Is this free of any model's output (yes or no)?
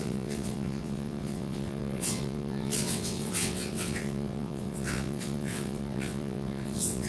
no